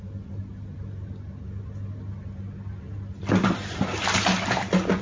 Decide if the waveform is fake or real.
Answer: real